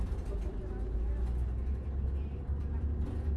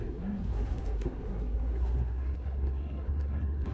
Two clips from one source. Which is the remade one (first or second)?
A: second